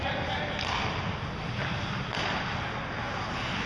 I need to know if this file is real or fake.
real